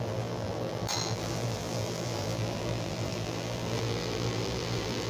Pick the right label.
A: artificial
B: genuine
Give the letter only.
A